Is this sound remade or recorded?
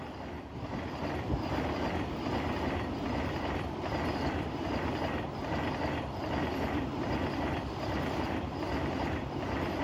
recorded